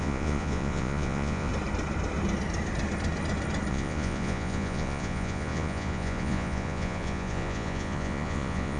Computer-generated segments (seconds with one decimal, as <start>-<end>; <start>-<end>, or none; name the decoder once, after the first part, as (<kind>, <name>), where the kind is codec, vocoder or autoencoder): 0.0-1.5 (vocoder, Vocos); 3.7-8.8